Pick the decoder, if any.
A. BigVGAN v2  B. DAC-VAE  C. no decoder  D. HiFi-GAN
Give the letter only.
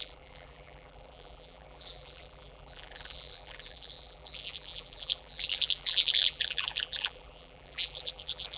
A